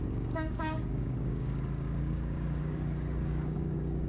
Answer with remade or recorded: remade